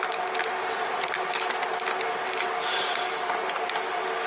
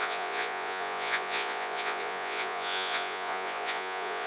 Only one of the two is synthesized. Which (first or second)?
second